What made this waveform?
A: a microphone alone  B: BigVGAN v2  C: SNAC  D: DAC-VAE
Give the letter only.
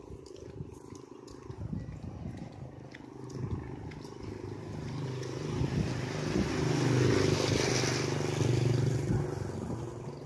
A